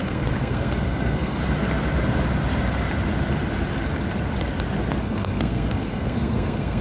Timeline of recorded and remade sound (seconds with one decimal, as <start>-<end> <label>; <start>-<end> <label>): 0.0-1.4 remade; 1.4-5.0 recorded; 5.0-6.8 remade